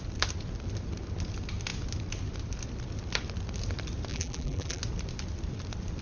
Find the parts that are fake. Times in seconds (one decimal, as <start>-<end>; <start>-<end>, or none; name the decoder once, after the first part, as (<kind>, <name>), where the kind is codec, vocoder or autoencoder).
4.1-4.8 (vocoder, BigVGAN v2)